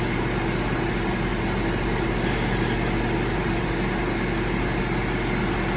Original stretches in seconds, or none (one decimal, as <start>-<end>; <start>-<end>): 0.0-5.8